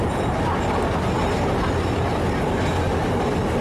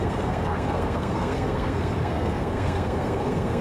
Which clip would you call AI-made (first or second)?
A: second